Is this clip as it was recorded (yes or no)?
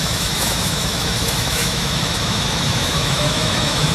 no